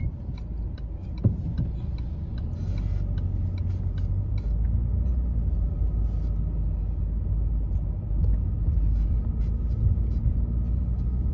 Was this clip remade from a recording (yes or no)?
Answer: no